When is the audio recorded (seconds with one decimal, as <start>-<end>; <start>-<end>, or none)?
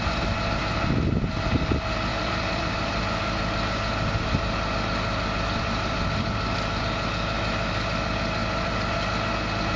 0.0-2.1; 6.8-8.4; 8.9-9.8